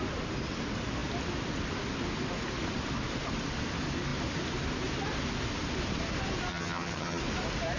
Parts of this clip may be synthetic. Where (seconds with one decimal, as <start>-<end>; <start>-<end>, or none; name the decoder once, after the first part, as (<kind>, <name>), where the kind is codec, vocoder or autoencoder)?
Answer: 6.5-7.2 (vocoder, HiFi-GAN)